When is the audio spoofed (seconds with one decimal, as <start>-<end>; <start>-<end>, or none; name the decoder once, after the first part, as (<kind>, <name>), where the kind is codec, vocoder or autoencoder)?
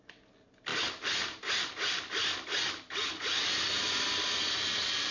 none